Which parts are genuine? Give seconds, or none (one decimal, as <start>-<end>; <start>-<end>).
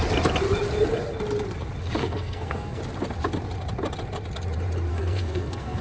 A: 0.0-2.0; 2.8-4.9